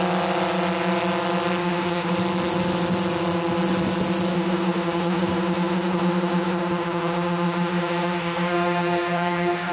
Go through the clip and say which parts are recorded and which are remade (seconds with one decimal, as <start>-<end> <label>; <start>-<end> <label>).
0.0-1.6 recorded; 1.6-2.1 remade; 2.1-4.3 recorded; 4.3-9.7 remade